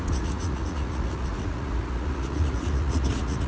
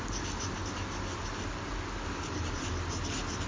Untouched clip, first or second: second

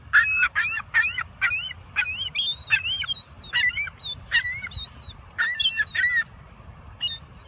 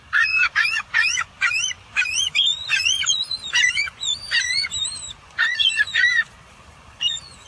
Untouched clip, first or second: first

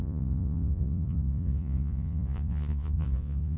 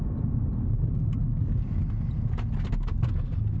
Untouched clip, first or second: second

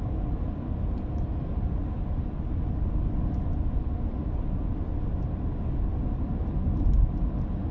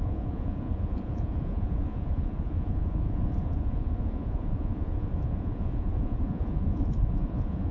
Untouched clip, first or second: first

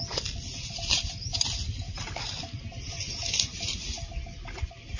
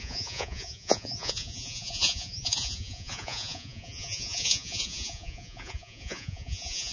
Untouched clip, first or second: first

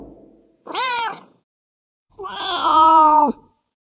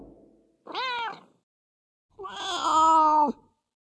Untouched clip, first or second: second